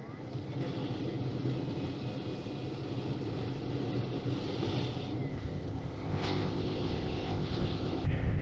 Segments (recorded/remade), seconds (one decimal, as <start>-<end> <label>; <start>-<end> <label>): 0.0-5.3 recorded; 5.3-8.4 remade